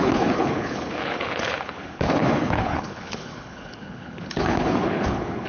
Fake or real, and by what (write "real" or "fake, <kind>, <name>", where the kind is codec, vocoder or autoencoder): fake, codec, HILCodec